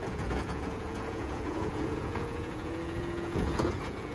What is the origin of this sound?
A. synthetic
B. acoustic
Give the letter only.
A